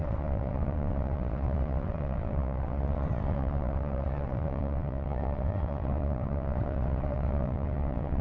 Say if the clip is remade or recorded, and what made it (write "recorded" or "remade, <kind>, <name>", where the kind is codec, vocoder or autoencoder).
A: remade, vocoder, WaveNeXt